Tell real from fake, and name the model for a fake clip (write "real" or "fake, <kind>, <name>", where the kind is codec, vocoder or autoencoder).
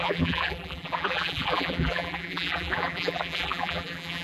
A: fake, vocoder, BigVGAN v2